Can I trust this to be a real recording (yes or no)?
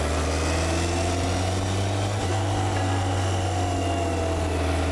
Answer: yes